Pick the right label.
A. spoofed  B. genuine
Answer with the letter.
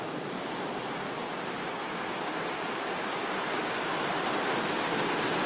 B